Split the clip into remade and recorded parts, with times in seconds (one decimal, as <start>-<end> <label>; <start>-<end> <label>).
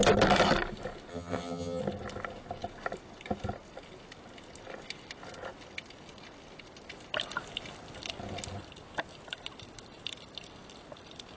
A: 0.0-1.1 recorded; 1.1-1.8 remade; 1.8-11.4 recorded